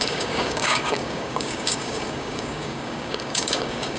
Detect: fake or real fake